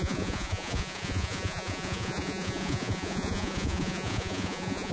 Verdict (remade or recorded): remade